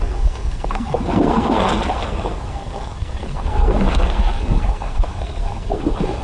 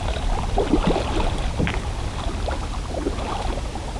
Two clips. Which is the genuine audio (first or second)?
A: second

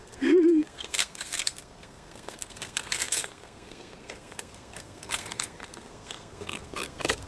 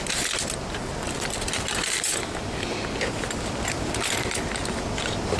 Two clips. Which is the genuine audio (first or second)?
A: second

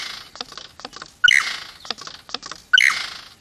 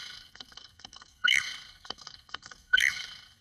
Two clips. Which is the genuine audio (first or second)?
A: first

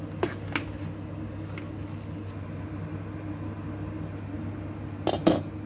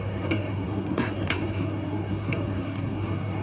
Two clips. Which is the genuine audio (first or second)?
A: first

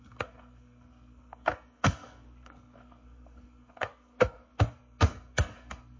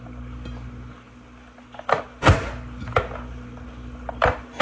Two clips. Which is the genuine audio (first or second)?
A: second